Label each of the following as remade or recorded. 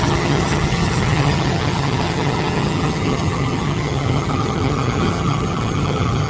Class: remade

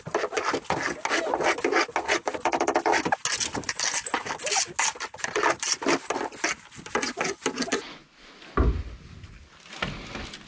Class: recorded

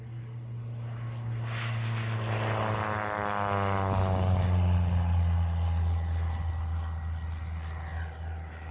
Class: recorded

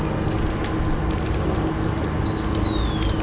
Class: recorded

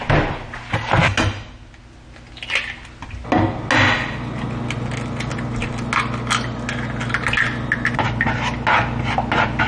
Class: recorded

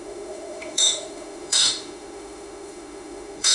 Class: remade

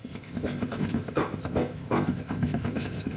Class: remade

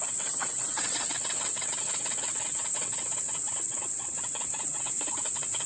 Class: remade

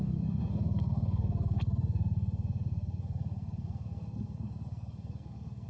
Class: remade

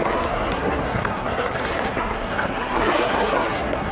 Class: remade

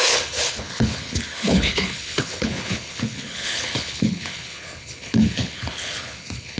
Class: remade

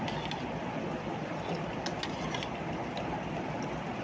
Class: recorded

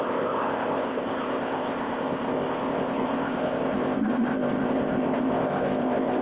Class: remade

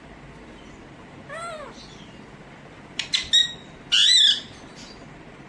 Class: recorded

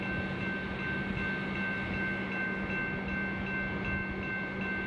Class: recorded